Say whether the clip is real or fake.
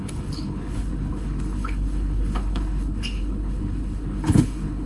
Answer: fake